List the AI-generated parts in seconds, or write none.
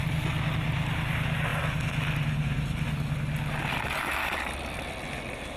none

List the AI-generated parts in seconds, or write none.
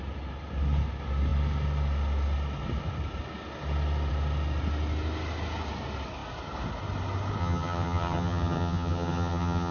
7.4-9.7 (vocoder, HiFi-GAN)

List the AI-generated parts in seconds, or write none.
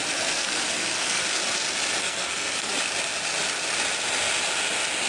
0.4-1.2 (codec, SNAC); 2.0-2.7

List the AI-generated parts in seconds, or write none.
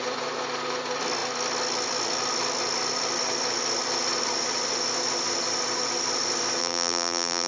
6.6-7.5 (vocoder, BigVGAN v2)